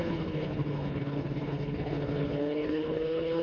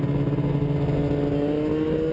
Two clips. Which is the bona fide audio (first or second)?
second